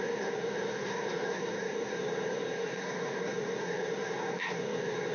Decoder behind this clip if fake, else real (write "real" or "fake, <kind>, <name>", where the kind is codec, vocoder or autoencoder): fake, codec, SNAC